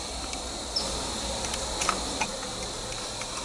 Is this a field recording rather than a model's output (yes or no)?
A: yes